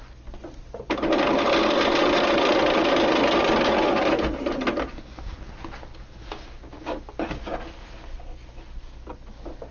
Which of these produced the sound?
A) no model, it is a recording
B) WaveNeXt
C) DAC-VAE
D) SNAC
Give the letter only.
A